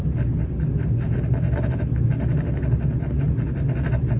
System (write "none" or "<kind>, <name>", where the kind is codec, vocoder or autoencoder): none